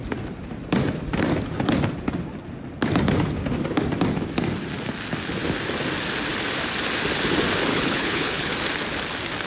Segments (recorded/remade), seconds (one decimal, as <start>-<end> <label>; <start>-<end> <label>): 0.0-7.7 recorded; 7.7-8.5 remade; 8.5-9.5 recorded